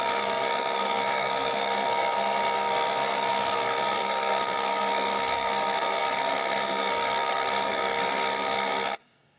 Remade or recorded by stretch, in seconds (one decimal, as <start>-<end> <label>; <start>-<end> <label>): 0.0-9.4 remade